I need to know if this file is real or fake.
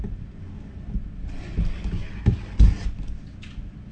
real